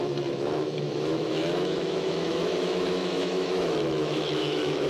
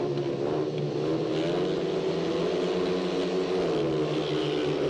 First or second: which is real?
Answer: second